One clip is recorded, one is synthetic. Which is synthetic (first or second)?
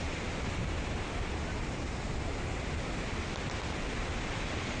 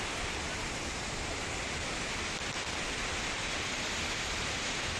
second